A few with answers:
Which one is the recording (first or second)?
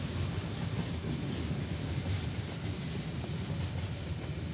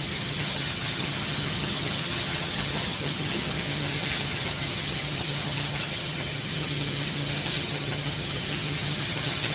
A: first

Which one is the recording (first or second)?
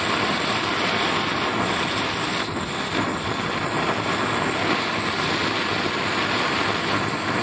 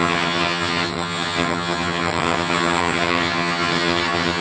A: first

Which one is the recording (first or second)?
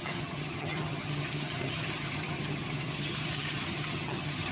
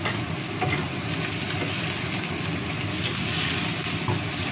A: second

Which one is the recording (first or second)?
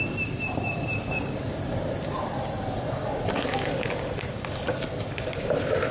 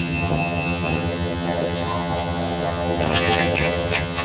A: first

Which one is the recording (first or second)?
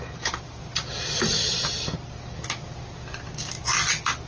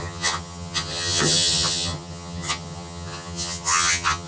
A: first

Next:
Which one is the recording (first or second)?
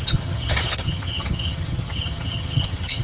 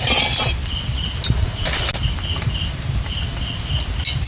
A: second